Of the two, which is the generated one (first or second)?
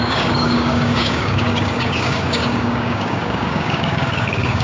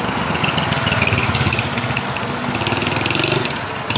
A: first